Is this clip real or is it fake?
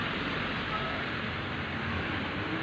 fake